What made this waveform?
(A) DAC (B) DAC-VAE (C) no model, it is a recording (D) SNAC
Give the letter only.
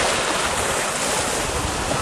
C